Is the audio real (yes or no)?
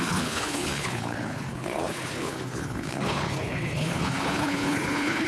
no